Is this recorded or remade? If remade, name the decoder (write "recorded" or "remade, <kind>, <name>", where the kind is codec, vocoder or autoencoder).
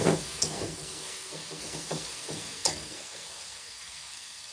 remade, codec, SNAC